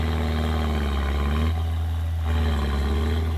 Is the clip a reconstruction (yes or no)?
no